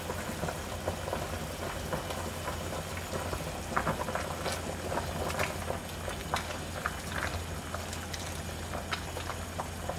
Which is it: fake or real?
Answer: real